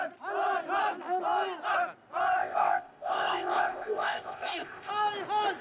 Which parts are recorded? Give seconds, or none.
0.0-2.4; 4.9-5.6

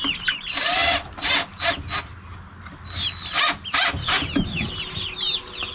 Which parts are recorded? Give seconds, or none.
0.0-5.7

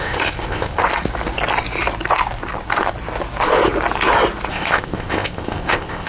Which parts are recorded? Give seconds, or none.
0.8-4.5